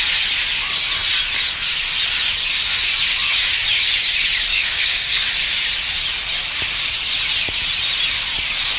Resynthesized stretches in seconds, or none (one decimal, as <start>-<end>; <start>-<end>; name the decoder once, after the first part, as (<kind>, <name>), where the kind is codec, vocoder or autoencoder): 4.5-5.2 (codec, DAC)